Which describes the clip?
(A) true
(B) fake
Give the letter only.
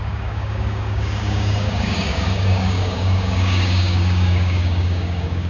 B